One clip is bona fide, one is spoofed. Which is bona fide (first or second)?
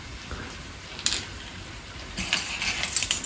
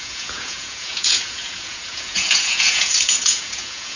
first